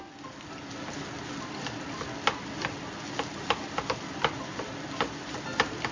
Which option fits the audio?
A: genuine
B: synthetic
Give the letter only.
A